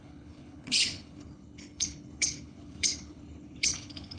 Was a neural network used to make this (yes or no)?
yes